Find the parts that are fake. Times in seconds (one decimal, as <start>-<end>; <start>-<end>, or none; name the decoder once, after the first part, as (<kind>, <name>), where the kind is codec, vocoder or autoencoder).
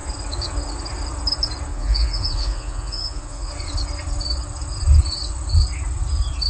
1.7-3.5 (vocoder, Vocos)